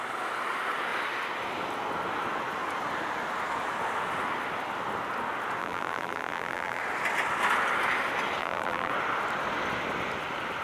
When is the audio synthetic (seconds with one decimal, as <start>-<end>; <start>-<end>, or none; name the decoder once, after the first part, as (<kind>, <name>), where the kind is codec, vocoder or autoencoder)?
5.6-6.8 (vocoder, BigVGAN v2); 8.4-8.9

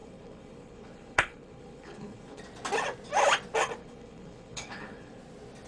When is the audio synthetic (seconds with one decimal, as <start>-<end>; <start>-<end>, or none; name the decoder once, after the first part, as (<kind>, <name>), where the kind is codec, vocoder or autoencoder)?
0.0-2.4 (codec, HILCodec); 3.8-5.2

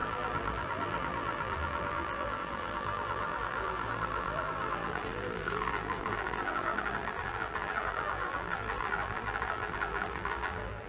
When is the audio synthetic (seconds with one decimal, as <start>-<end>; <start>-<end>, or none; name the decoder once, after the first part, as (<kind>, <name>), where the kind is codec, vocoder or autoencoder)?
0.0-10.9 (vocoder, BigVGAN v2)

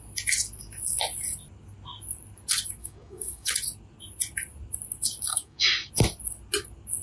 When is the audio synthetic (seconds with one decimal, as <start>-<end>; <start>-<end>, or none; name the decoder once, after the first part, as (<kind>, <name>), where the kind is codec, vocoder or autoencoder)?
2.8-3.5 (codec, DAC); 5.3-5.9

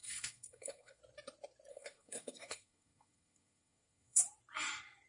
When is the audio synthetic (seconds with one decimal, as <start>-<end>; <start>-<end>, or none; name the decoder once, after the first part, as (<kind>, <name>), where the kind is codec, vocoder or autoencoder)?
0.0-1.0 (codec, SNAC); 1.7-4.2

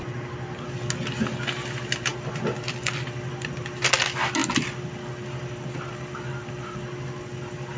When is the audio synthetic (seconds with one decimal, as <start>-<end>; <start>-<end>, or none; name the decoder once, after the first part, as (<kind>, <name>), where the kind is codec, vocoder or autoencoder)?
none